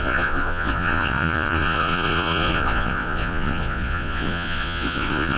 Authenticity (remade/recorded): remade